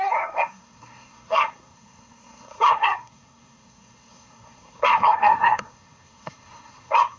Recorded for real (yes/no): no